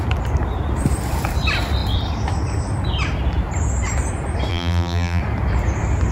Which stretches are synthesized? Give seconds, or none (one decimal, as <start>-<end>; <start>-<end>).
4.5-5.2